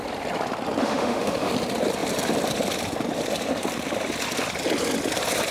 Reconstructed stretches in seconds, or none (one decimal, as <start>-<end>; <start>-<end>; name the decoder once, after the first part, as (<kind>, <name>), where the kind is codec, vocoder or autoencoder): 0.8-1.5 (autoencoder, DAC-VAE)